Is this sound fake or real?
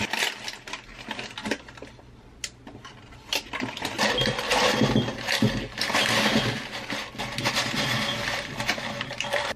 real